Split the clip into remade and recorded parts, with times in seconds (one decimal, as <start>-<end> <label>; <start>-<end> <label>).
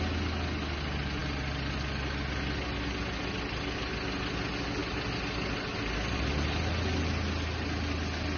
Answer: 0.0-8.4 recorded